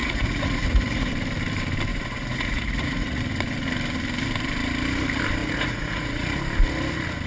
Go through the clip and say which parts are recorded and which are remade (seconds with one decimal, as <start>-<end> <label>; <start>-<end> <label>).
0.0-1.1 remade; 1.1-1.9 recorded; 1.9-3.2 remade; 3.2-5.4 recorded; 5.4-6.4 remade; 6.4-7.3 recorded